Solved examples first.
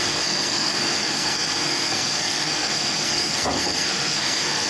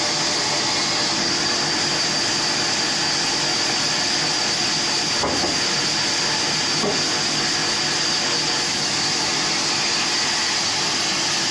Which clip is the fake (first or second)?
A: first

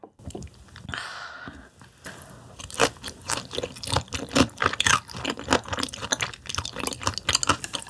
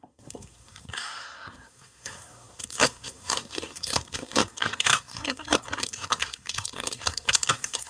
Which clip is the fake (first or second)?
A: second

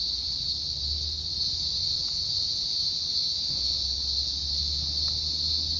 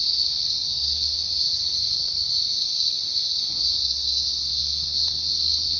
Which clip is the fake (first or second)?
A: second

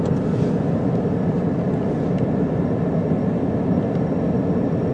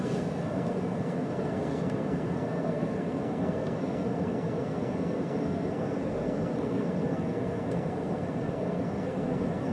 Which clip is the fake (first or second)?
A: second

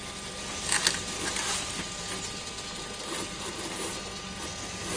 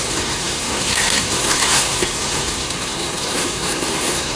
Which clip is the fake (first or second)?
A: second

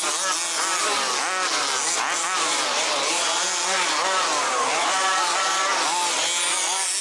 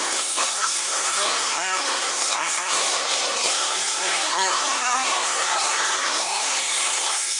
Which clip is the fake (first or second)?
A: second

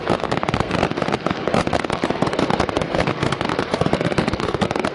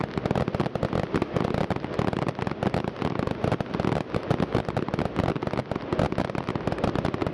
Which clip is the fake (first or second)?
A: first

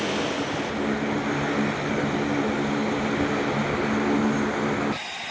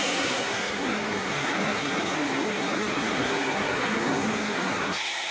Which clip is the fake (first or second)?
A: second